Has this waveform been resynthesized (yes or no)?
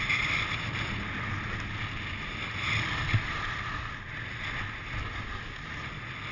no